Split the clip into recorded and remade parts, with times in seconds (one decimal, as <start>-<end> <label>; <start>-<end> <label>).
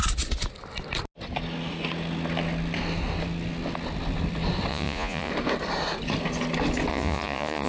0.0-4.7 recorded; 4.7-5.3 remade; 5.3-6.9 recorded; 6.9-7.7 remade